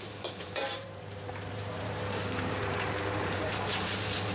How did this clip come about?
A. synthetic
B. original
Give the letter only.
A